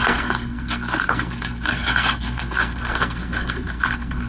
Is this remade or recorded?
remade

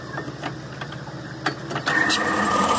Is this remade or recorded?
recorded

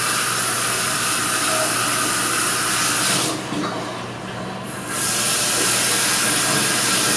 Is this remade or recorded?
recorded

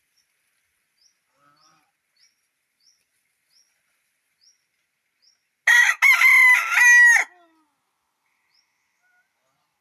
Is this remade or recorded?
recorded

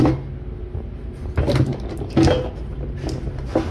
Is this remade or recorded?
recorded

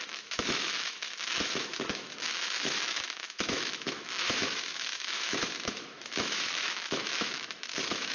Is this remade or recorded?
remade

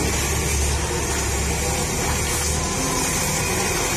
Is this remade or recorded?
recorded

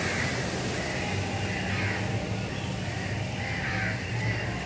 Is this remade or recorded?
remade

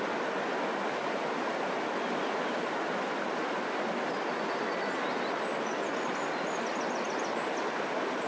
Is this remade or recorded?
recorded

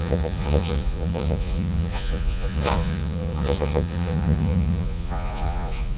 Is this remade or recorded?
remade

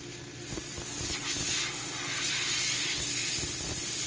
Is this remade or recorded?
recorded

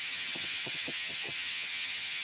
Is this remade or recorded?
remade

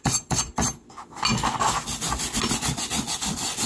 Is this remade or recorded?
recorded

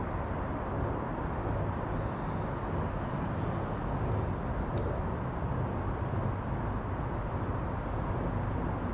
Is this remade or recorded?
recorded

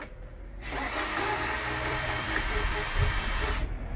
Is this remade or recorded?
remade